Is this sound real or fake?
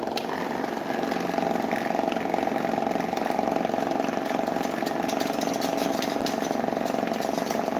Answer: real